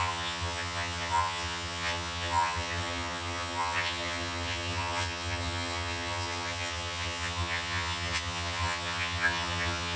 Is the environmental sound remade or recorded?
remade